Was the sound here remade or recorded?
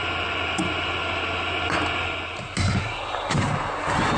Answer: recorded